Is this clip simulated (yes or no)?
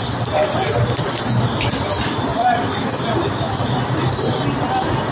no